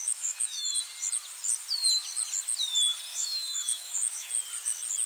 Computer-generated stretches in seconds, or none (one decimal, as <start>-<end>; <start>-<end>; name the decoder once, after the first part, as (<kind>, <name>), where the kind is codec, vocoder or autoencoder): 0.0-0.8 (autoencoder, DAC-VAE); 3.1-4.3